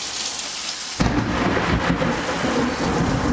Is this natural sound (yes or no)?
yes